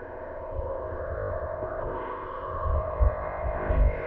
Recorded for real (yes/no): no